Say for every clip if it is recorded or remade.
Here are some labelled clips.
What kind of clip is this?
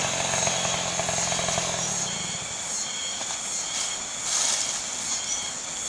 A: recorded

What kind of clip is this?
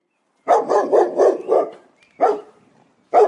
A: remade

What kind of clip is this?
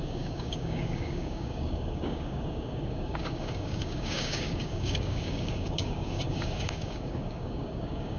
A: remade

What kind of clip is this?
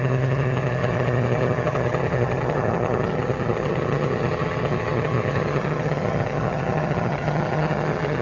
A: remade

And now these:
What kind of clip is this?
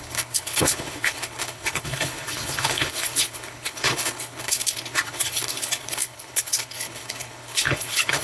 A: remade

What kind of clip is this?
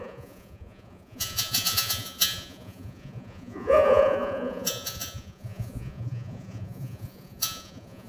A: remade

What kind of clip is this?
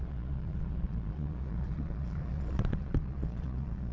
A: remade